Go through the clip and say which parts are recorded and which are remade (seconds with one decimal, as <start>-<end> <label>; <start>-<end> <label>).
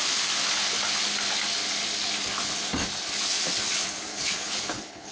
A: 0.0-4.1 recorded; 4.1-5.1 remade